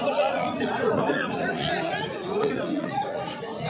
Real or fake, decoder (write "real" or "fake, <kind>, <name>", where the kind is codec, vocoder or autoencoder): fake, vocoder, Vocos